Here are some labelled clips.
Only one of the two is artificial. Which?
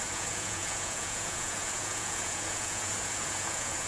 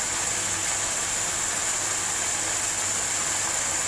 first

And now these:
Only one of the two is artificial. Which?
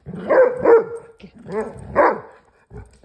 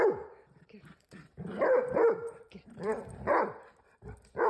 second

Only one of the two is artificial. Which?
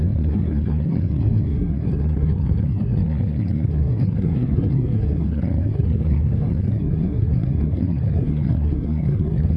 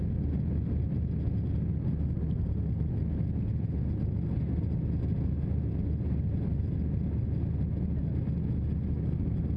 first